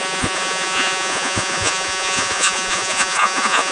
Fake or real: fake